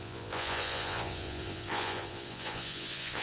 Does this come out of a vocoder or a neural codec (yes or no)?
yes